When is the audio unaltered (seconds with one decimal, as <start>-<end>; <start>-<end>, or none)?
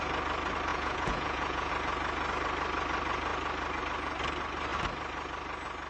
0.0-0.7; 1.7-5.9